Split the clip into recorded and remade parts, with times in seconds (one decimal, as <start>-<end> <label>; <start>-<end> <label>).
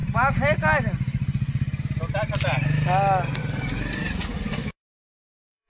0.0-4.6 recorded; 4.6-5.7 remade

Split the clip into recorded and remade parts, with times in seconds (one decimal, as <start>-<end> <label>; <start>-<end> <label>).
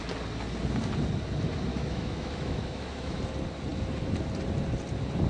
0.0-1.7 recorded; 1.7-3.2 remade; 3.2-5.3 recorded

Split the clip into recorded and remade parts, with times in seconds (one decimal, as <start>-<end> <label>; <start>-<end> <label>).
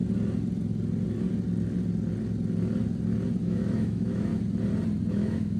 0.0-3.4 recorded; 3.4-4.3 remade; 4.3-5.1 recorded; 5.1-5.6 remade